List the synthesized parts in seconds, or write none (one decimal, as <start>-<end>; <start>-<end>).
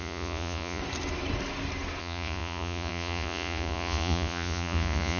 0.0-0.8; 2.0-5.2